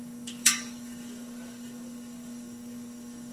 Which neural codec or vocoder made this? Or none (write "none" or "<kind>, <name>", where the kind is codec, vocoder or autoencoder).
codec, DAC